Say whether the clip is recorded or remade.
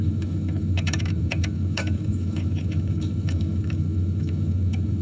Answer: remade